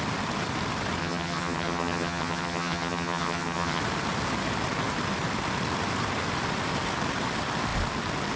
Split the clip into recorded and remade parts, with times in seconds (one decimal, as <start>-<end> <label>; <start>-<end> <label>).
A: 0.0-1.0 recorded; 1.0-3.8 remade; 3.8-8.4 recorded